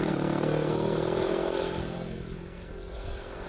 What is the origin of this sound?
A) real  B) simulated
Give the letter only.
B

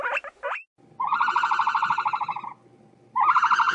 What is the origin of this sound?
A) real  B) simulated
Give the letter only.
A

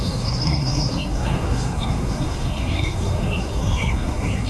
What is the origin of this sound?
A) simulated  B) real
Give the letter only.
A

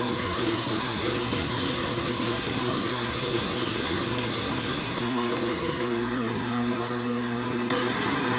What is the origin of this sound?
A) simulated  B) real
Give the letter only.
A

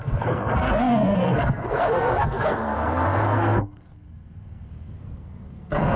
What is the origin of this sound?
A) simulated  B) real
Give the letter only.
A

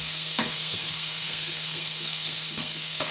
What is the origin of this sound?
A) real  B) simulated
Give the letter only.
B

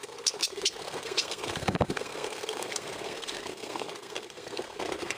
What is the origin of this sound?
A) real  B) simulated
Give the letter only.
B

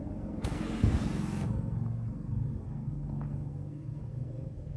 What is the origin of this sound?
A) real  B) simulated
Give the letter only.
B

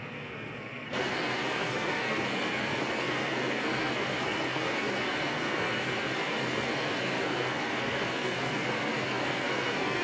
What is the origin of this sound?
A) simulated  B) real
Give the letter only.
A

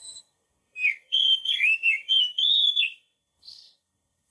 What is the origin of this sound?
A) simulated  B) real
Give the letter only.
A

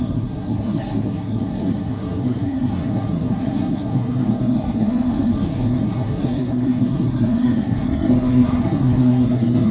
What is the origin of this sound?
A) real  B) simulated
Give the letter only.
B